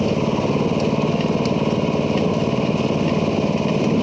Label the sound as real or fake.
real